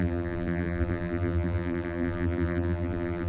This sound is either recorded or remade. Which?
remade